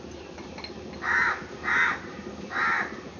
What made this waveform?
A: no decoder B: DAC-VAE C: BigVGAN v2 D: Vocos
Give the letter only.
A